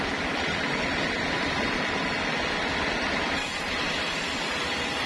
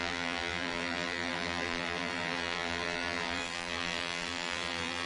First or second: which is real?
first